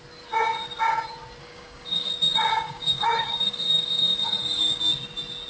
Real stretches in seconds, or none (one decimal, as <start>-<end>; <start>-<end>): 0.0-1.4; 2.1-2.5; 4.8-5.5